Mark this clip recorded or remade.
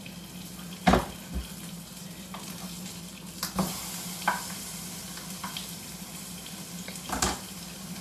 recorded